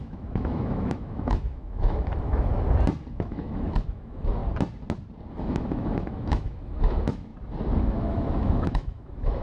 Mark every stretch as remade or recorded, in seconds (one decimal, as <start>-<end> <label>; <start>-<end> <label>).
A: 0.0-2.5 remade; 2.5-3.1 recorded; 3.1-4.4 remade; 4.4-5.3 recorded; 5.3-7.3 remade; 7.3-7.8 recorded; 7.8-9.4 remade